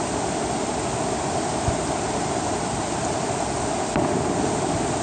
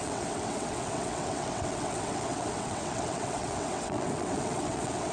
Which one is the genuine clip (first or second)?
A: first